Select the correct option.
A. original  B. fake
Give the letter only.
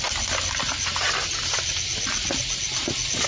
A